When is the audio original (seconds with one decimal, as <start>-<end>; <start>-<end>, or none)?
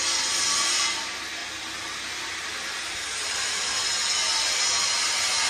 0.0-5.5